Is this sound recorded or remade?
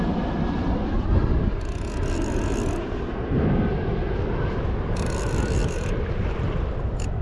recorded